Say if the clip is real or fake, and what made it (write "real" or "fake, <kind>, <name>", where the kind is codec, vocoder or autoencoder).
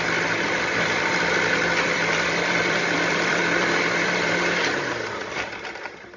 fake, vocoder, BigVGAN v2